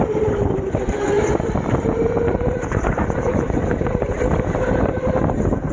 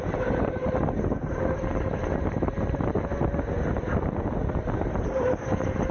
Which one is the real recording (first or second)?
second